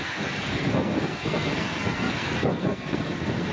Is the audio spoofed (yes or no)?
yes